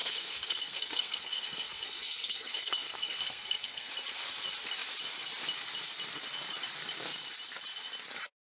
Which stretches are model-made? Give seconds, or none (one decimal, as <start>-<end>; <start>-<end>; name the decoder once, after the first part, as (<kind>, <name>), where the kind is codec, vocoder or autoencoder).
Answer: 0.0-3.9 (codec, SNAC)